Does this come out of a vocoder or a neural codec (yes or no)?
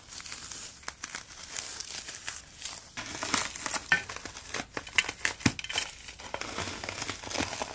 no